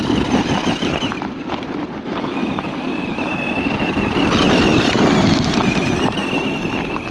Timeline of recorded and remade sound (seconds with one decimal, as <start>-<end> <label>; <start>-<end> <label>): 0.0-2.4 recorded; 2.4-4.2 remade; 4.2-4.7 recorded; 4.7-5.6 remade; 5.6-7.1 recorded